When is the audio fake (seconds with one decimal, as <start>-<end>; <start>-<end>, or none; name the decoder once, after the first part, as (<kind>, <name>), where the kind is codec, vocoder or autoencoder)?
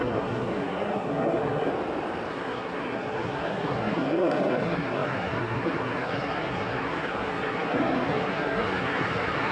0.0-1.7 (codec, SNAC); 2.3-9.5